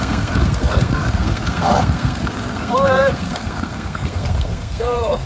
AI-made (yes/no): yes